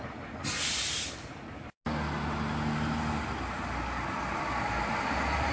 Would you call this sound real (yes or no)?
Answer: yes